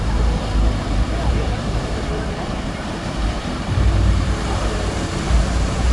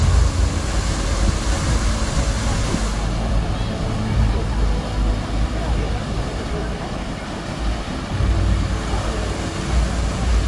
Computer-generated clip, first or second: first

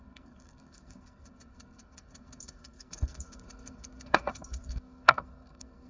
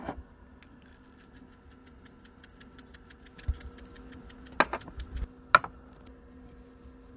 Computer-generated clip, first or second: first